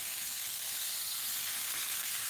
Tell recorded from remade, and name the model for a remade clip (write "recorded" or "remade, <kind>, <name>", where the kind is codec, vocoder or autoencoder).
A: remade, codec, SNAC